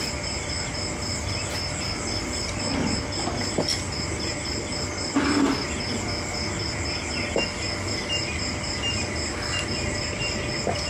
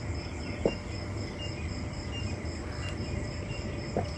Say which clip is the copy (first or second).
second